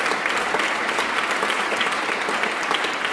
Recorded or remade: recorded